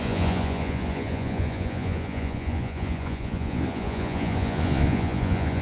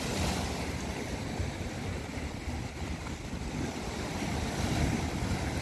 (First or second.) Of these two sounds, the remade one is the first